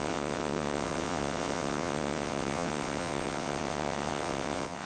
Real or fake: fake